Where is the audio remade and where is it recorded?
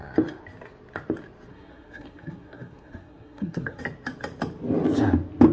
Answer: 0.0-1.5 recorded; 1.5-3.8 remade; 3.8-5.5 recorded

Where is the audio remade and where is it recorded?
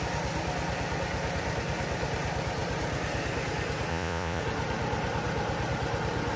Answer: 0.0-3.9 recorded; 3.9-4.4 remade; 4.4-6.4 recorded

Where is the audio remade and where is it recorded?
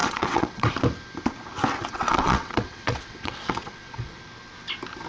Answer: 0.0-0.7 remade; 0.7-1.8 recorded; 1.8-4.2 remade; 4.2-5.1 recorded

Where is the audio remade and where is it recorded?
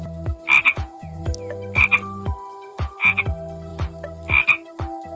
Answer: 0.0-0.7 recorded; 0.7-1.2 remade; 1.2-2.7 recorded; 2.7-3.2 remade; 3.2-5.2 recorded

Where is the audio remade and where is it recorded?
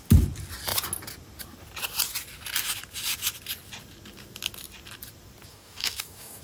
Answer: 0.0-5.5 recorded; 5.5-6.4 remade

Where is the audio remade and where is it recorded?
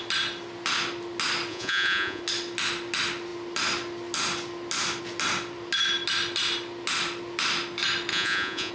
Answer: 0.0-1.5 recorded; 1.5-2.2 remade; 2.2-8.1 recorded; 8.1-8.7 remade